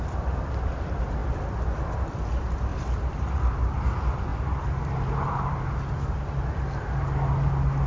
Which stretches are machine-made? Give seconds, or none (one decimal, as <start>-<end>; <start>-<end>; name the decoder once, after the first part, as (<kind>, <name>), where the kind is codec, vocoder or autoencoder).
2.7-3.3 (vocoder, BigVGAN v2); 4.3-6.3